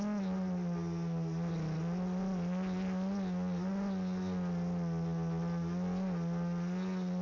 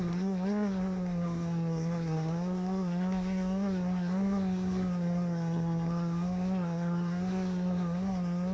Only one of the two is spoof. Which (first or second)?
second